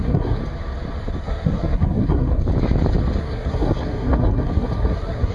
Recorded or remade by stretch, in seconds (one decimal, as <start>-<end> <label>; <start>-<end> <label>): 0.0-0.4 remade; 0.4-1.2 recorded; 1.2-2.4 remade; 2.4-3.2 recorded; 3.2-5.3 remade